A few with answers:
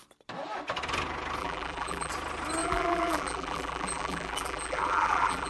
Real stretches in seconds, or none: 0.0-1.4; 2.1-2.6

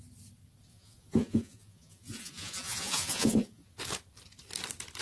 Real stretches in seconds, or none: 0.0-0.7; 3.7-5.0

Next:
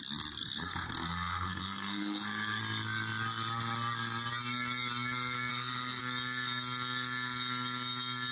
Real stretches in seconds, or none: 0.0-0.4; 2.6-5.5; 6.0-8.3

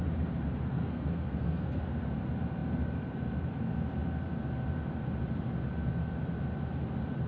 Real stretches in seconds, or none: 0.0-0.7; 2.1-7.3

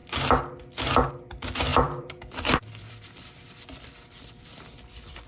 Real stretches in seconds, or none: 0.0-1.7

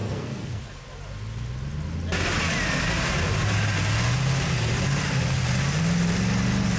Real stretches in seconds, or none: 0.6-6.8

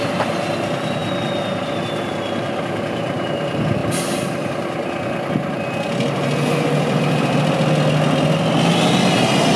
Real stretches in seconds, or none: 0.0-9.6

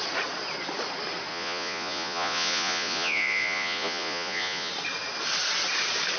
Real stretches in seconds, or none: 0.0-1.3; 4.7-6.2